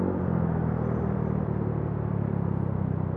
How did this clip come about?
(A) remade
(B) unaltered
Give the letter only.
B